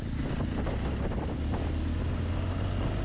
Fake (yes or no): no